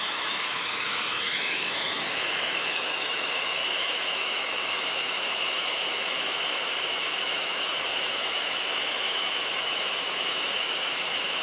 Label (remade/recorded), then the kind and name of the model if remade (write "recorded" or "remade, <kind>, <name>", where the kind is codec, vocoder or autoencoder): remade, autoencoder, DAC-VAE